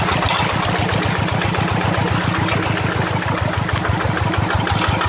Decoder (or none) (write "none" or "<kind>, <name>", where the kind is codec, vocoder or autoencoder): none